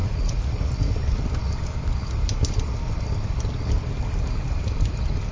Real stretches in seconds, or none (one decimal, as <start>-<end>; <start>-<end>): 0.7-5.3